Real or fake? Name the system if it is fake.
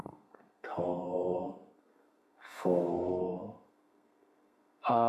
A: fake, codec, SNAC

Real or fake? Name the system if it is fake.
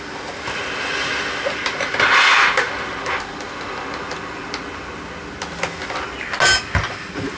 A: real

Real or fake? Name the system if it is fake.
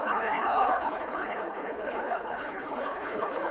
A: fake, codec, HILCodec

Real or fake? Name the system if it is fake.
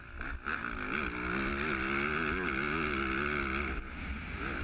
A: real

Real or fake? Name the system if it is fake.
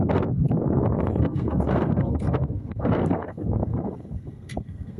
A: fake, codec, SNAC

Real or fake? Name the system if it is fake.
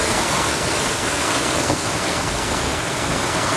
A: fake, codec, SNAC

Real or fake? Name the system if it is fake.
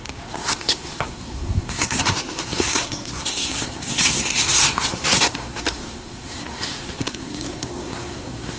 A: fake, codec, SNAC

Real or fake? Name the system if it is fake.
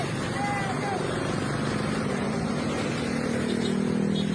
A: real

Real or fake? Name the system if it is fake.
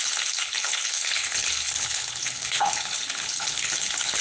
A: fake, codec, HILCodec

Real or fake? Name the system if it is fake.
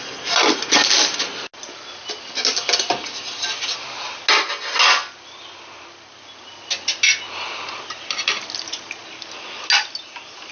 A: real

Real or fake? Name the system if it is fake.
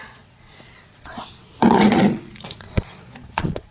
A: fake, vocoder, Vocos